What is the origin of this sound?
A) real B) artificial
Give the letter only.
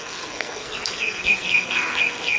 B